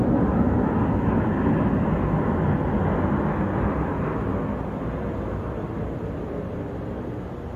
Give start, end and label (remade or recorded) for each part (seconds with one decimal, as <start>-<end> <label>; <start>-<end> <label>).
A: 0.0-7.6 recorded

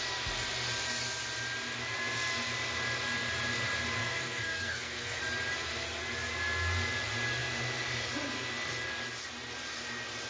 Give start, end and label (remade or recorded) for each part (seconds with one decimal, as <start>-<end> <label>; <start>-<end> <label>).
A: 0.0-4.0 recorded; 4.0-5.2 remade; 5.2-10.3 recorded